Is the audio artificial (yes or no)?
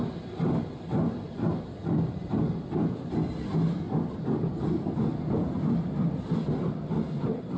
no